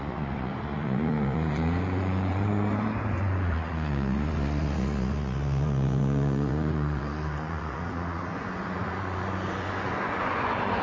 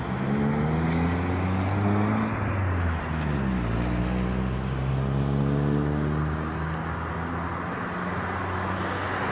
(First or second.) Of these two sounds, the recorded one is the second